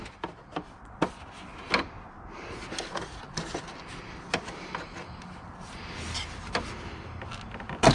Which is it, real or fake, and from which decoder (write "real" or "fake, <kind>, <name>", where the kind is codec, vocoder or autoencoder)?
real